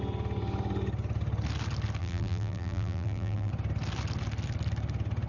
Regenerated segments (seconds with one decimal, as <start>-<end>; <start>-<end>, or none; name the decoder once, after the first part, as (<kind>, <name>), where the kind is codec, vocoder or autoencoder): 2.0-3.5 (vocoder, BigVGAN v2)